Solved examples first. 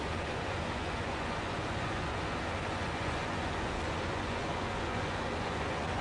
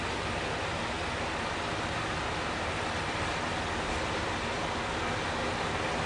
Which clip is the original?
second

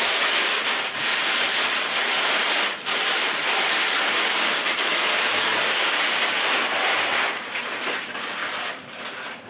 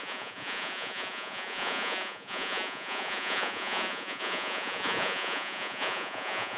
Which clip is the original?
first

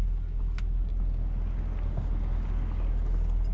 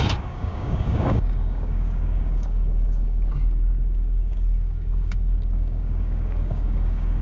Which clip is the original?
first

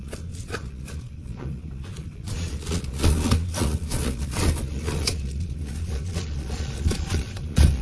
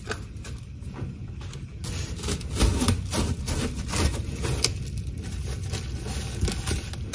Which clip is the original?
second